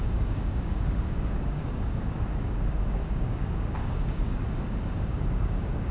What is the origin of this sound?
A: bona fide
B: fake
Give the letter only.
B